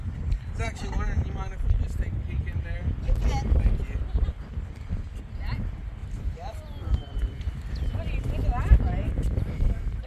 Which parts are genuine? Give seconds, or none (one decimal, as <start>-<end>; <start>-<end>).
0.0-6.0; 7.7-10.1